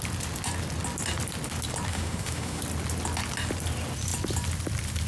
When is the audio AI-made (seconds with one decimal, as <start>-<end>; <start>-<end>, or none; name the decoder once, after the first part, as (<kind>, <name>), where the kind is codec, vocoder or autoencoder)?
1.9-2.6 (autoencoder, DAC-VAE)